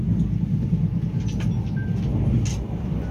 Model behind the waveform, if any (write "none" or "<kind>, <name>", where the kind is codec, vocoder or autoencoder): none